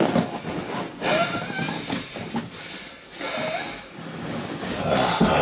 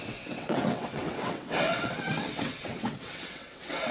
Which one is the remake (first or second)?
second